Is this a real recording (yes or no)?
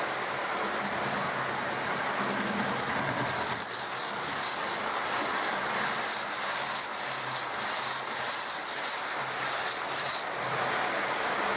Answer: yes